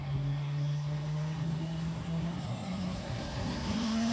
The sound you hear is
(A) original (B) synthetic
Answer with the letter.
B